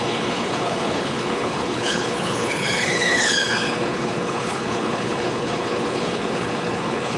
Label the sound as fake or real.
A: fake